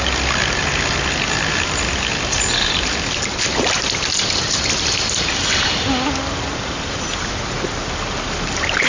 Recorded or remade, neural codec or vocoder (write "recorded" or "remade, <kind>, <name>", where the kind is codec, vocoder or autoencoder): recorded